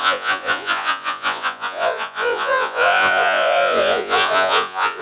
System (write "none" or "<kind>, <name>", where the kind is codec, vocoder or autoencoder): vocoder, Vocos